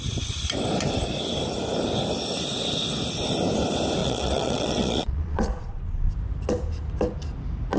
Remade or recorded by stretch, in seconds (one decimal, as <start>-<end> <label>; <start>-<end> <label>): 0.0-4.0 recorded; 4.0-6.1 remade; 6.1-7.8 recorded